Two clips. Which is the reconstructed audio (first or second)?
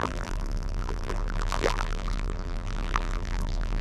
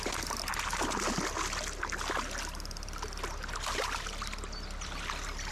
first